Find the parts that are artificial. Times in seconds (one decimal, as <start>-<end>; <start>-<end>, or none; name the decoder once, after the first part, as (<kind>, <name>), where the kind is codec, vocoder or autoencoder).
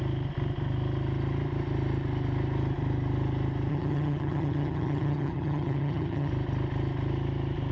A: 3.7-6.3 (vocoder, HiFi-GAN)